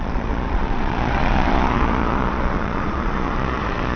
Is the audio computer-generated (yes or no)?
yes